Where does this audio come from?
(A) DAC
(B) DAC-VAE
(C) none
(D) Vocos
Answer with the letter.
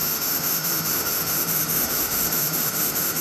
B